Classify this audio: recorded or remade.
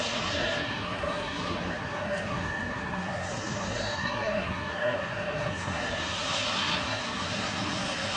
remade